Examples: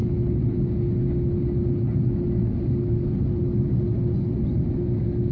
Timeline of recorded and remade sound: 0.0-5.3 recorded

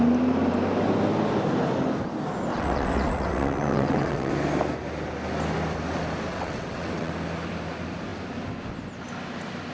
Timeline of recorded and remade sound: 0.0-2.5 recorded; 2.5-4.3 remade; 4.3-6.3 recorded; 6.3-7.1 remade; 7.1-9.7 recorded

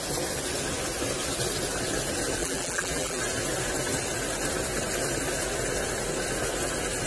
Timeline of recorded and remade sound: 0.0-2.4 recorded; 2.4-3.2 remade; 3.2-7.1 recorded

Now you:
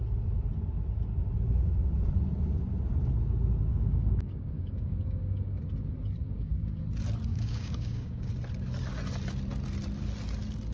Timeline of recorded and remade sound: 0.0-3.7 recorded; 3.7-5.6 remade; 5.6-6.2 recorded; 6.2-6.8 remade; 6.8-7.3 recorded; 7.3-8.3 remade; 8.3-10.7 recorded